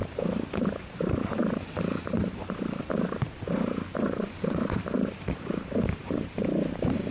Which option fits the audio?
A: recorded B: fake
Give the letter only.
B